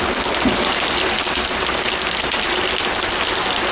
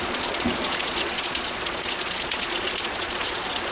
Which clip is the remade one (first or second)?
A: second